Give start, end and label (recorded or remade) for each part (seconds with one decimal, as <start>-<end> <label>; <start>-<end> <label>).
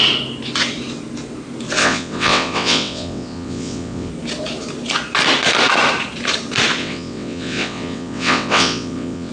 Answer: 0.0-1.8 recorded; 1.8-4.1 remade; 4.1-6.8 recorded; 6.8-9.3 remade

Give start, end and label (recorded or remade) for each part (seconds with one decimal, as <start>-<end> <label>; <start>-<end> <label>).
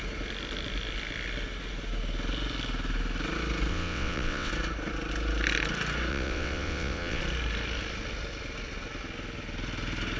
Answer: 0.0-3.7 recorded; 3.7-4.5 remade; 4.5-6.1 recorded; 6.1-7.2 remade; 7.2-10.2 recorded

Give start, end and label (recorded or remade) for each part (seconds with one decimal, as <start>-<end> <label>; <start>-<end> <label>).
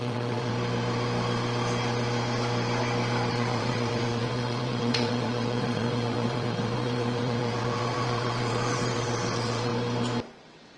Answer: 0.0-0.5 remade; 0.5-3.3 recorded; 3.3-9.7 remade; 9.7-10.4 recorded; 10.4-10.8 remade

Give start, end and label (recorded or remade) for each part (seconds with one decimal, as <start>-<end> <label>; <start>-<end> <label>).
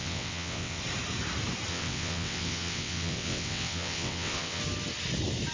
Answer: 0.0-0.8 remade; 0.8-1.7 recorded; 1.7-4.6 remade; 4.6-5.5 recorded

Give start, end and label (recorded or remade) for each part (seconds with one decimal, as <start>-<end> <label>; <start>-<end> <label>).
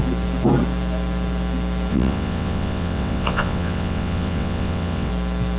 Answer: 0.0-1.9 recorded; 1.9-5.1 remade; 5.1-5.6 recorded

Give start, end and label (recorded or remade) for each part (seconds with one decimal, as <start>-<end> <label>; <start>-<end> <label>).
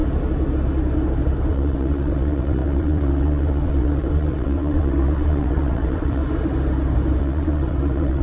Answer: 0.0-1.5 recorded; 1.5-6.2 remade; 6.2-7.2 recorded; 7.2-8.2 remade